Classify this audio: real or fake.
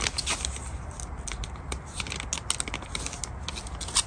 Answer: real